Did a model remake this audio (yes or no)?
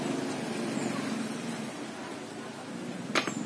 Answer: no